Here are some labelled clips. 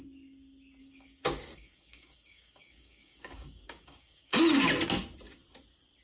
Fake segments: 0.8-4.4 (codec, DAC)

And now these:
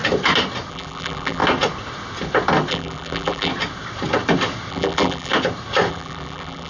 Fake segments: 0.7-1.4 (vocoder, BigVGAN v2); 2.7-3.5; 4.7-5.3; 5.9-6.7

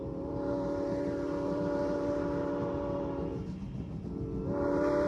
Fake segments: 0.0-3.4 (vocoder, BigVGAN v2); 4.4-5.1